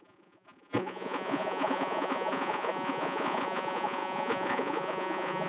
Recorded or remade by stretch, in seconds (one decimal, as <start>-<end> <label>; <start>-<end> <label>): 0.0-5.5 remade